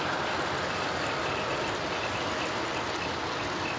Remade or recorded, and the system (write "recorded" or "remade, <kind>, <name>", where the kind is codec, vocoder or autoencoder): recorded